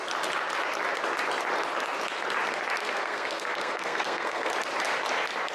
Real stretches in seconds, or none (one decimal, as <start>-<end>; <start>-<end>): 0.0-2.8; 4.5-5.5